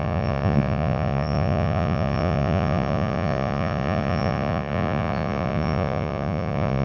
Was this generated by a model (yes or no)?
yes